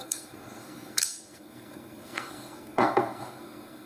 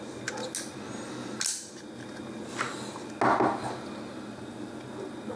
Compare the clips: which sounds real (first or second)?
second